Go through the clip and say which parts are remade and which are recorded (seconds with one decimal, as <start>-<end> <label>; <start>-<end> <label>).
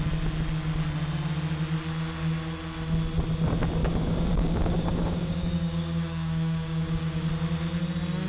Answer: 0.0-3.8 recorded; 3.8-7.3 remade; 7.3-8.3 recorded